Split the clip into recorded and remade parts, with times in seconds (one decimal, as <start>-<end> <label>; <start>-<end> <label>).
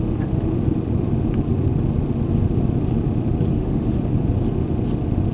0.0-3.5 recorded; 3.5-4.0 remade; 4.0-5.3 recorded